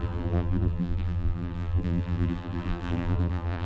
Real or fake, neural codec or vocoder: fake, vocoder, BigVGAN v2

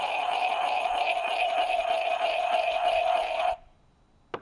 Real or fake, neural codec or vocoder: real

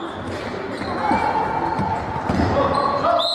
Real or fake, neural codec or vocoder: real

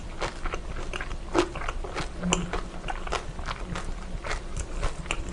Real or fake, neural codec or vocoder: real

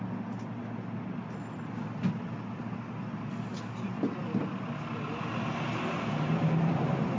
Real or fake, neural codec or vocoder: real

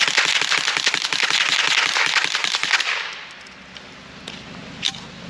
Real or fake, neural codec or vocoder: real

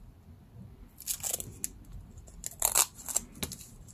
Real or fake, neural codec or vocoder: real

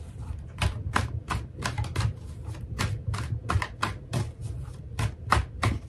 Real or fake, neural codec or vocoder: real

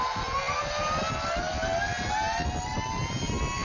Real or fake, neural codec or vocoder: real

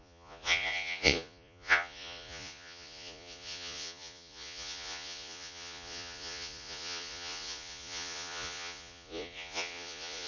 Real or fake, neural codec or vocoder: fake, vocoder, Vocos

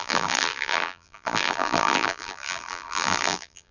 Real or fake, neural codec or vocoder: fake, vocoder, BigVGAN v2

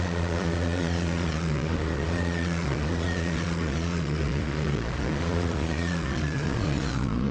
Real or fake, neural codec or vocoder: fake, vocoder, Vocos